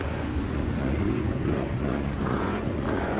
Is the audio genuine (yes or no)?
no